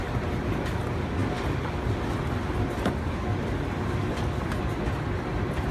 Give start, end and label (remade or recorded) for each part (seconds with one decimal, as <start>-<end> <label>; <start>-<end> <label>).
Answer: 0.0-5.7 recorded